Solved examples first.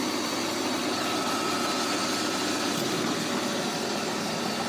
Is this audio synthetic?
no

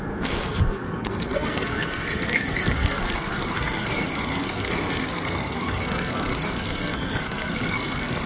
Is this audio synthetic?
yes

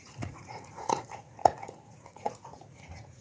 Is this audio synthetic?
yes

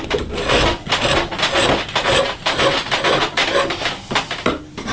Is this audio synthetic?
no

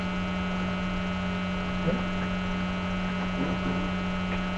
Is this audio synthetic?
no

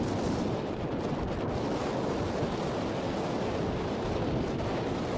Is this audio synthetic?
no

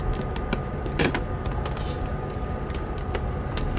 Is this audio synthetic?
no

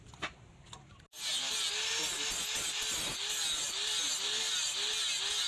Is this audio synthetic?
no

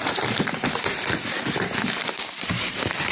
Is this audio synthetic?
yes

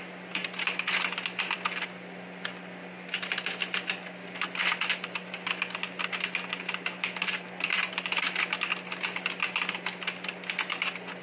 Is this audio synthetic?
no